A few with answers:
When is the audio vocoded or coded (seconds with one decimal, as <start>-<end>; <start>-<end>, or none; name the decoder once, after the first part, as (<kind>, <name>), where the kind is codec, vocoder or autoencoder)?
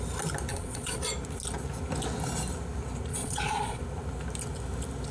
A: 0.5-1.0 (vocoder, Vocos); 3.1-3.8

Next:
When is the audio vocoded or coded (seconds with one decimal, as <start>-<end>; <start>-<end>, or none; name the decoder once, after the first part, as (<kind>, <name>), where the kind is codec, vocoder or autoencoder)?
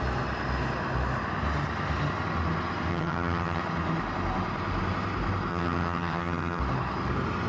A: 2.9-3.6 (vocoder, HiFi-GAN); 5.5-6.6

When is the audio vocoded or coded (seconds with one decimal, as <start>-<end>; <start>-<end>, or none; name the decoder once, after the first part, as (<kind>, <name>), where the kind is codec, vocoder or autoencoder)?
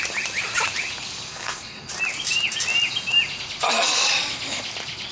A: 1.3-1.9 (codec, HILCodec)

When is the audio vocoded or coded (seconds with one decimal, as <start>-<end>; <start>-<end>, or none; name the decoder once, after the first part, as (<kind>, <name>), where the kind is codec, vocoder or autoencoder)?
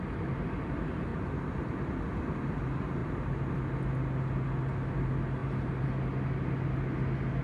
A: 1.1-1.9 (vocoder, BigVGAN v2); 3.0-3.5; 5.4-5.9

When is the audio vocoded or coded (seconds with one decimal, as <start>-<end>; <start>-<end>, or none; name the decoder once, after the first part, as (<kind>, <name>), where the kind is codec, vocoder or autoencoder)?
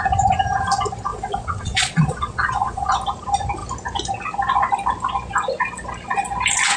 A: 1.1-2.9 (vocoder, Vocos)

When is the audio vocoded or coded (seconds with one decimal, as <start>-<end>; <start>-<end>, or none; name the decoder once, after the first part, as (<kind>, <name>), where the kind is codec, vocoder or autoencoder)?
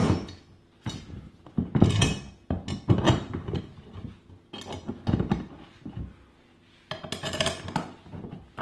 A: none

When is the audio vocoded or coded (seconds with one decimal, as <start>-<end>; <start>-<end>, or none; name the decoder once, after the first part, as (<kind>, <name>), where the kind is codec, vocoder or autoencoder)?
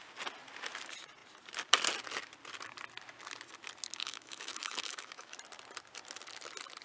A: 4.0-5.4 (autoencoder, DAC-VAE)